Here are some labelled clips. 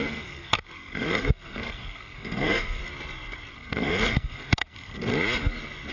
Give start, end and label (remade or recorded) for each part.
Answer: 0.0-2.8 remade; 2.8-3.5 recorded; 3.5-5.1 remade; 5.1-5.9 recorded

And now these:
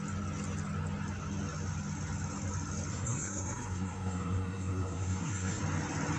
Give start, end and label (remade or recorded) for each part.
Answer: 0.0-2.9 recorded; 2.9-5.6 remade; 5.6-6.2 recorded

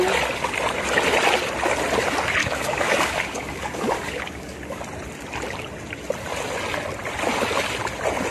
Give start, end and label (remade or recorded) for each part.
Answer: 0.0-2.4 recorded; 2.4-4.8 remade; 4.8-8.3 recorded

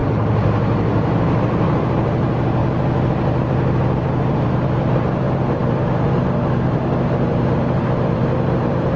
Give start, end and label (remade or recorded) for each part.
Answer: 0.0-2.6 remade; 2.6-4.3 recorded; 4.3-9.0 remade

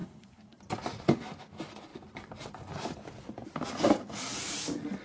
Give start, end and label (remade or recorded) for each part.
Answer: 0.0-0.6 remade; 0.6-5.0 recorded